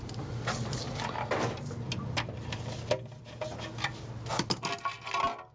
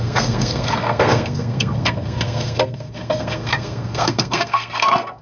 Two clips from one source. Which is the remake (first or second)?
second